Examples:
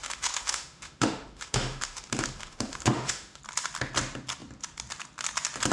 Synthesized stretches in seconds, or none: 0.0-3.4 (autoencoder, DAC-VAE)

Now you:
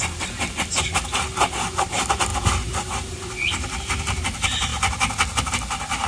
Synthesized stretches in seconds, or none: 2.3-3.3 (vocoder, BigVGAN v2)

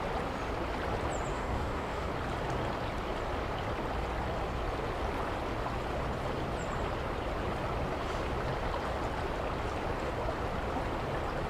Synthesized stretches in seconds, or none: 1.3-2.1 (codec, DAC)